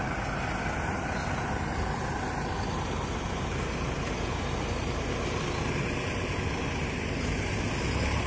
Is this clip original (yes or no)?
yes